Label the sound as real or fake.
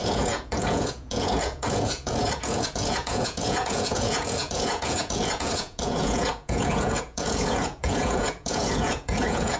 fake